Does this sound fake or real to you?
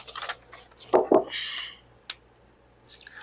real